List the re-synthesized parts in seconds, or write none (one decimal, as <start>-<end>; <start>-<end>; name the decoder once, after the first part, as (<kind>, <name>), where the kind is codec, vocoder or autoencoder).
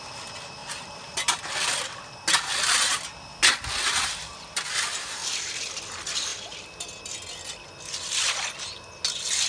none